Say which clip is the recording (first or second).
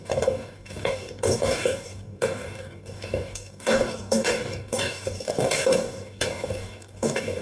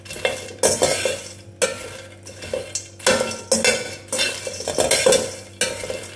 second